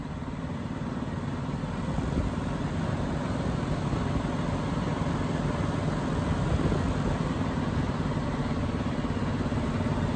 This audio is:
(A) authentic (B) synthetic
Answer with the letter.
A